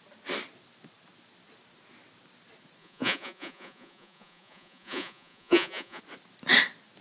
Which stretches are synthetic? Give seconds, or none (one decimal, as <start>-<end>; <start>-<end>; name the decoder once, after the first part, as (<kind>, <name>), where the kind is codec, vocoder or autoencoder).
2.8-6.0 (vocoder, Vocos)